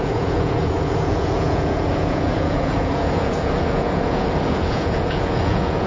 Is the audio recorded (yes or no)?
no